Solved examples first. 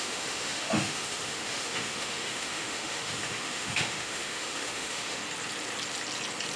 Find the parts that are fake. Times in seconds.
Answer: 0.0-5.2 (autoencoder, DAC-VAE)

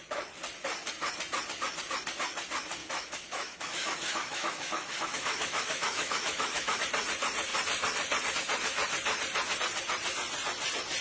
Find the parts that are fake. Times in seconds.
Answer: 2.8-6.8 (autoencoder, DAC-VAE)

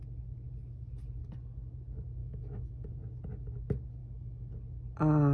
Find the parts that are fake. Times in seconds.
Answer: 2.2-2.9 (autoencoder, DAC-VAE); 4.0-4.5

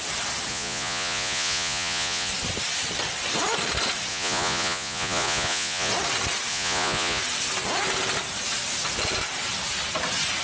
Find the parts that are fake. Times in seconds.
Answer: 0.5-2.3 (vocoder, Vocos); 4.1-5.9; 6.5-7.2

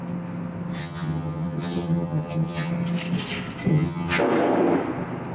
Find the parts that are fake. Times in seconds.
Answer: 0.8-2.7 (vocoder, HiFi-GAN); 3.7-4.2

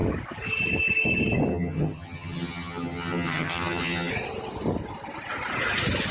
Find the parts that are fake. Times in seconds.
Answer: 1.5-4.1 (vocoder, HiFi-GAN)

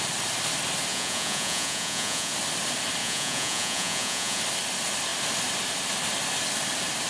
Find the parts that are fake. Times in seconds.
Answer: 0.9-2.3 (vocoder, Vocos); 3.0-4.4

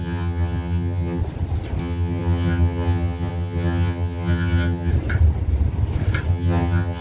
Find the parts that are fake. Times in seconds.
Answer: 0.0-1.2 (vocoder, HiFi-GAN); 1.8-4.9; 6.3-7.0